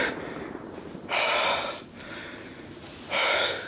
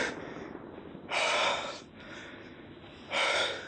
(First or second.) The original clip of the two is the second